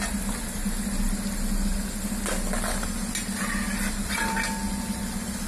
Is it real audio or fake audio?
real